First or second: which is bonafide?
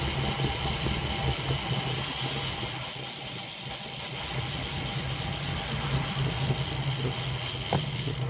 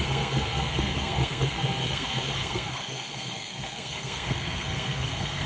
first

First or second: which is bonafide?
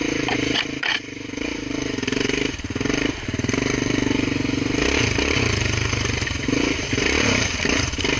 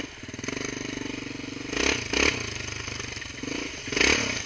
second